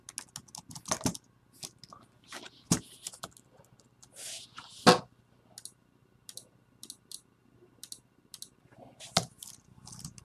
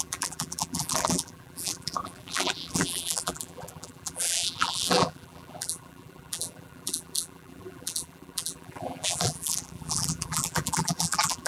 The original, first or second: first